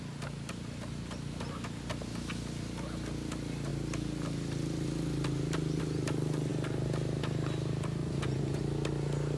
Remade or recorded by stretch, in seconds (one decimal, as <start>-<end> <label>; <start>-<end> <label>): 0.0-8.0 recorded; 8.0-8.6 remade; 8.6-9.4 recorded